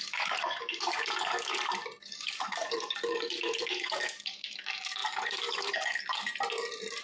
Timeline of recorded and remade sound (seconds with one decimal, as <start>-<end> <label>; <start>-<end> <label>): 0.0-1.5 remade; 1.5-2.0 recorded; 2.0-6.3 remade; 6.3-7.0 recorded